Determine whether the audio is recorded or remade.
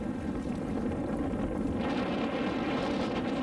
recorded